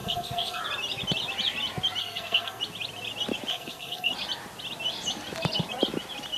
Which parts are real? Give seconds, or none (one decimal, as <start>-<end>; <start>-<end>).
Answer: 0.6-2.0; 2.6-3.5; 4.1-6.4